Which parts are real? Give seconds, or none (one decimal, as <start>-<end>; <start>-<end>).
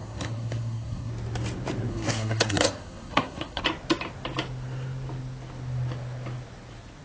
1.1-1.9; 3.6-7.0